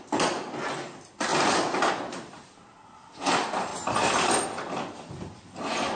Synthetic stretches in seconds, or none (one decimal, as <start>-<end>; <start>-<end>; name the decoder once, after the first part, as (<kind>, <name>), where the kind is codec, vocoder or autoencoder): none